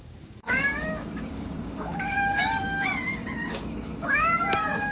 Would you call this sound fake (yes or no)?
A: yes